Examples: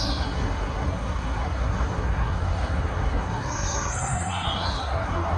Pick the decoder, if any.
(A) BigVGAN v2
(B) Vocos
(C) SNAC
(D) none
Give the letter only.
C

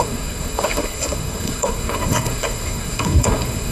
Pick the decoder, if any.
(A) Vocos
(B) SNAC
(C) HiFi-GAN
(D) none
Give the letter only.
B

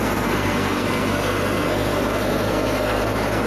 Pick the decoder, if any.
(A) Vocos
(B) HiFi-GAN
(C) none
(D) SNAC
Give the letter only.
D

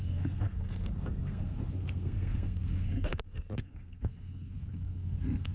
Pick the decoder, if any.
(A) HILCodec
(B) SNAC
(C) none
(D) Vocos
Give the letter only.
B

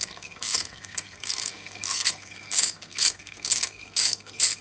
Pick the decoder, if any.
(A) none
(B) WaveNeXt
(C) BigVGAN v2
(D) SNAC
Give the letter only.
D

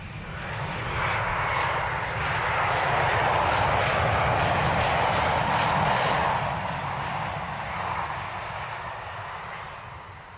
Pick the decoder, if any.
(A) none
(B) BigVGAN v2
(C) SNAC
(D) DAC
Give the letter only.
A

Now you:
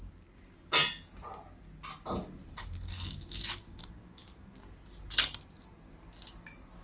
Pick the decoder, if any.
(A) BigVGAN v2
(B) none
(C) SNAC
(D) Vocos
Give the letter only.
B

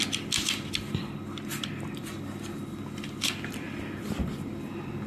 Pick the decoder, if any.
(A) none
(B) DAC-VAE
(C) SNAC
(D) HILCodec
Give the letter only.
A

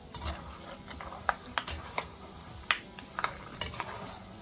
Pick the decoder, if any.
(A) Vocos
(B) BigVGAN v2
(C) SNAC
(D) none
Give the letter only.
D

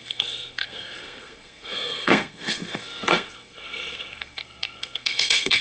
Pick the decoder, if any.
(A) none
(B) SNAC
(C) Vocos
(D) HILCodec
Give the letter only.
B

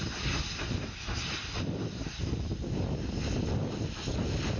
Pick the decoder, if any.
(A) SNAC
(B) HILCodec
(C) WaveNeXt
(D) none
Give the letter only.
D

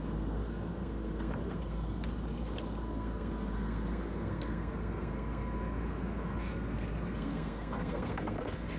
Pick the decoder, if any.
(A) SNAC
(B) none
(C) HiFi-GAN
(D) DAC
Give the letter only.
A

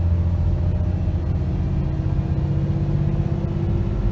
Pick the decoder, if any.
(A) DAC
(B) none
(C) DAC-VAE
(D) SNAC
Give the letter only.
B